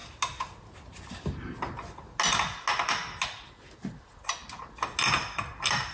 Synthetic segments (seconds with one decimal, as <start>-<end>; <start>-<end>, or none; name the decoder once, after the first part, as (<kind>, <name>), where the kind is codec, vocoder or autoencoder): none